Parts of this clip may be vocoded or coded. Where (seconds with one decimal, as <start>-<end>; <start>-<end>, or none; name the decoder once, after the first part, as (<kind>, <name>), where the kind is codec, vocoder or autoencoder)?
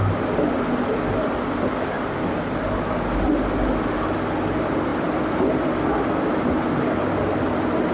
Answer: none